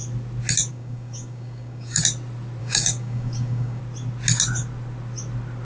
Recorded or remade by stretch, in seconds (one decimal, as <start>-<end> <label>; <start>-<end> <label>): 0.0-0.7 recorded; 0.7-2.0 remade; 2.0-2.6 recorded; 2.6-3.8 remade; 3.8-5.6 recorded

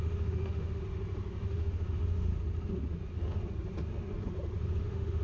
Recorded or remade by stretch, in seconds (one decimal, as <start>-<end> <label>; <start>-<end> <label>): 0.0-0.8 remade; 0.8-1.3 recorded; 1.3-2.3 remade; 2.3-4.8 recorded; 4.8-5.2 remade